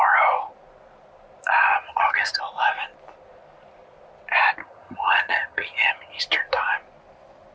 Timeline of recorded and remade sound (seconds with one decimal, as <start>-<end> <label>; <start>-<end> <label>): 0.0-1.7 recorded; 1.7-2.4 remade; 2.4-4.6 recorded; 4.6-6.2 remade; 6.2-7.5 recorded